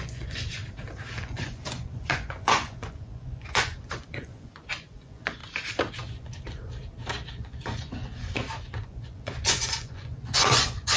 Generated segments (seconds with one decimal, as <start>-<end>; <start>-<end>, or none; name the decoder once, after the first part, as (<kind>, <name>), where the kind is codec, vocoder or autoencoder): 0.0-0.6 (vocoder, Vocos); 1.2-5.4; 6.1-6.8; 7.3-11.0